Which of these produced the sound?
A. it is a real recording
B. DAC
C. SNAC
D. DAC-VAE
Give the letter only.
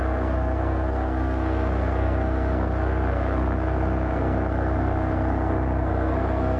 C